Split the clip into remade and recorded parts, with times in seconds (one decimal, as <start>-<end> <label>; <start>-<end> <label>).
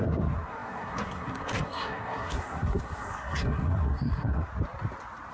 0.0-4.5 remade; 4.5-5.3 recorded